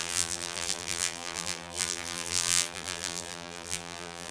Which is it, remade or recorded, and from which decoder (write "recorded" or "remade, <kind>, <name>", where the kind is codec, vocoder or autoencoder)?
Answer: remade, vocoder, BigVGAN v2